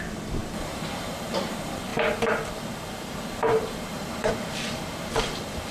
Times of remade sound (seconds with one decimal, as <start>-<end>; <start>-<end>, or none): 0.0-0.4; 0.9-5.7